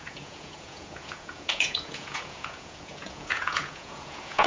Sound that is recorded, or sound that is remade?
remade